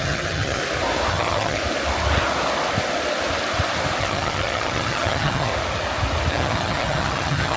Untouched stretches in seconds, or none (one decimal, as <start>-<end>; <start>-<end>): 0.6-1.1; 1.6-4.0; 5.5-6.3